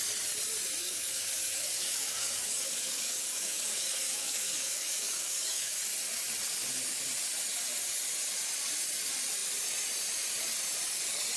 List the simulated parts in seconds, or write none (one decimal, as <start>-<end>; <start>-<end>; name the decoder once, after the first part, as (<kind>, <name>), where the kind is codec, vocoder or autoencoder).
0.8-5.8 (codec, DAC)